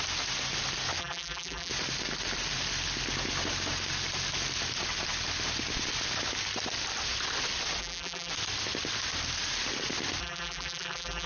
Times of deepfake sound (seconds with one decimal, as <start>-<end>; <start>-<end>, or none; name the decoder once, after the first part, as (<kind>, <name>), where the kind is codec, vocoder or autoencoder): 1.0-1.7 (vocoder, BigVGAN v2); 7.8-8.3; 10.2-11.3